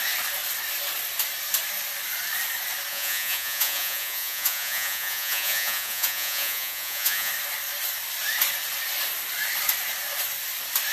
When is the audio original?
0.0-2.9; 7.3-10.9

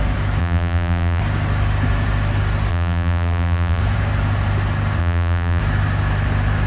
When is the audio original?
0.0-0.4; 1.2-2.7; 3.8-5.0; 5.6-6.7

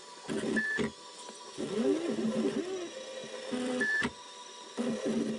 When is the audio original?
0.0-3.2; 5.0-5.4